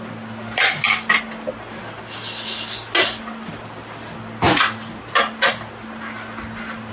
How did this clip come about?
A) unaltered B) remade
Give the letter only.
A